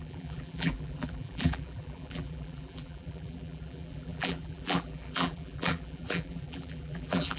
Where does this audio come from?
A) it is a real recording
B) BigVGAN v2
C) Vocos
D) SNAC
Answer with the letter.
B